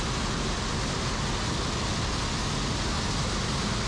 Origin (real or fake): real